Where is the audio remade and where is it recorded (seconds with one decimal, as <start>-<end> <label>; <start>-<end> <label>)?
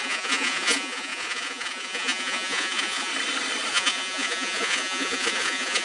0.0-3.1 remade; 3.1-3.7 recorded; 3.7-5.8 remade